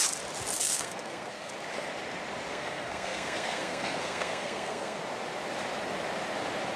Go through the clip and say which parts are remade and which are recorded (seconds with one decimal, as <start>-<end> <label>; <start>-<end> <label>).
0.0-0.6 recorded; 0.6-1.5 remade; 1.5-2.5 recorded; 2.5-5.0 remade; 5.0-6.8 recorded